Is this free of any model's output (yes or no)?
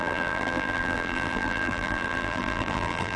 no